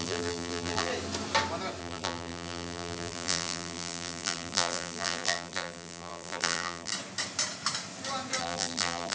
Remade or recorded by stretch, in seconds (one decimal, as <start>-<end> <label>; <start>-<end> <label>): 0.0-0.9 remade; 0.9-1.8 recorded; 1.8-6.9 remade; 6.9-8.4 recorded; 8.4-9.1 remade